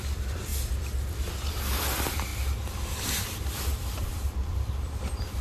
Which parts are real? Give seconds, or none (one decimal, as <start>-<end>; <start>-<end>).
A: 2.3-3.2